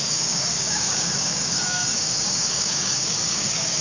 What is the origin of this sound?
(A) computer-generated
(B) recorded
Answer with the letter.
A